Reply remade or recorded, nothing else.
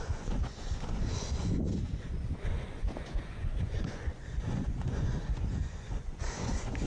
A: remade